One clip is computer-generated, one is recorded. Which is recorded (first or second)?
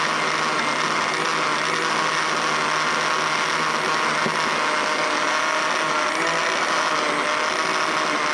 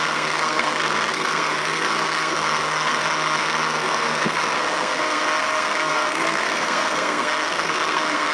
first